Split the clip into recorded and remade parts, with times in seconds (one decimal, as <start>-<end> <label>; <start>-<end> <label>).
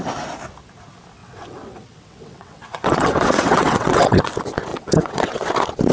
0.0-1.2 recorded; 1.2-4.3 remade; 4.3-4.7 recorded; 4.7-5.5 remade; 5.5-5.9 recorded